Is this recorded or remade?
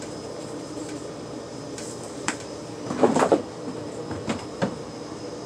remade